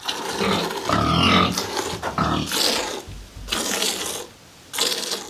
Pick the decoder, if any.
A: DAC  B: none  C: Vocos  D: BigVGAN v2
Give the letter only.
B